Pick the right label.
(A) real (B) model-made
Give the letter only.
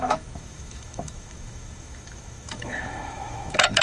B